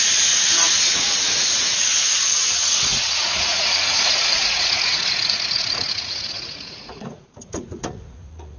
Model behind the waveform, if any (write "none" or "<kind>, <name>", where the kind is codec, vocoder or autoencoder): vocoder, Vocos